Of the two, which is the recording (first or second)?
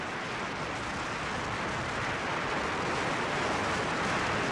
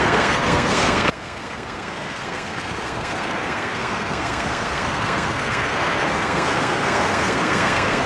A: first